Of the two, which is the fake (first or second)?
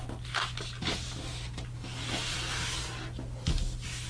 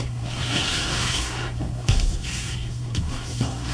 second